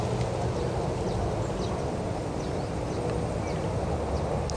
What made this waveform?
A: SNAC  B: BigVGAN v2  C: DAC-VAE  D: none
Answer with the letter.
D